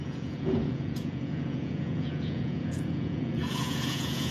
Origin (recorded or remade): remade